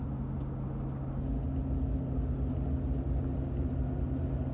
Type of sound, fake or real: real